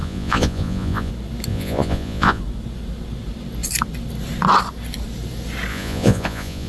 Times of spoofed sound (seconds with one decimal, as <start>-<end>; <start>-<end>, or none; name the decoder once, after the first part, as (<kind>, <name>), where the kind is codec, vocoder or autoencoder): 0.0-1.1 (vocoder, Vocos); 1.5-2.4; 5.7-6.7